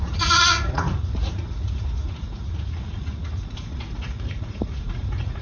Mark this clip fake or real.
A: fake